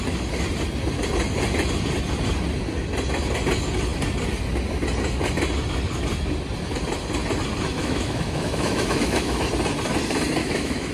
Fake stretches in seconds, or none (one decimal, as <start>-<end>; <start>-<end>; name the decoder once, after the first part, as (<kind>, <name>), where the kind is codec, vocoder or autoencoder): 7.8-9.5 (autoencoder, DAC-VAE); 10.4-10.9